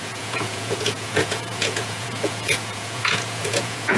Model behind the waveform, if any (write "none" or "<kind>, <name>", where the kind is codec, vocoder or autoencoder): vocoder, Vocos